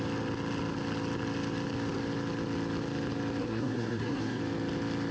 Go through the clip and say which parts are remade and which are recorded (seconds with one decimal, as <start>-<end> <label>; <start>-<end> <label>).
0.0-3.4 recorded; 3.4-4.4 remade; 4.4-5.1 recorded